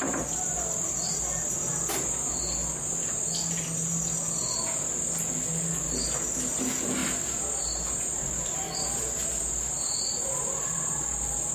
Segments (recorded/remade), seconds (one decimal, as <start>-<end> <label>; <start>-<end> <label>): 0.0-11.5 recorded